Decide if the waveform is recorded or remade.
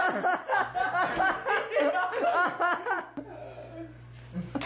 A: recorded